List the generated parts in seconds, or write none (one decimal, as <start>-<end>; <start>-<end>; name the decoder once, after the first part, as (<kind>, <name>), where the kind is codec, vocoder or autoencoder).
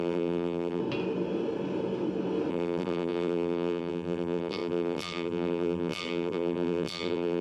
0.0-0.8 (vocoder, BigVGAN v2); 2.5-7.4